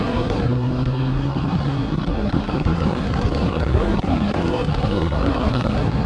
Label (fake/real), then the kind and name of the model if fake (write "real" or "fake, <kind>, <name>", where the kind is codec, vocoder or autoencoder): fake, codec, SNAC